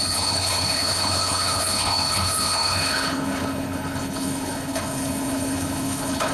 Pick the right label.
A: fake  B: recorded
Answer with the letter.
A